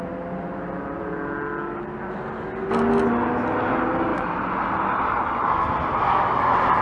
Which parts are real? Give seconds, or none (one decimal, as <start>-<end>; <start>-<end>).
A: 0.0-4.1; 4.6-6.8